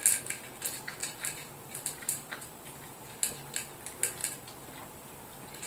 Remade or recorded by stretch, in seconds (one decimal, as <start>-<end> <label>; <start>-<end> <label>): 0.0-1.0 recorded; 1.0-3.2 remade; 3.2-4.2 recorded; 4.2-5.2 remade; 5.2-5.7 recorded